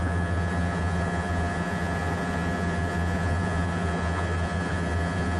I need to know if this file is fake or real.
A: fake